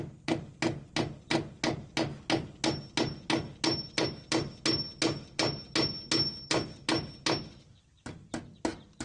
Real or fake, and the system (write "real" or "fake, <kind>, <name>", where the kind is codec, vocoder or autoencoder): real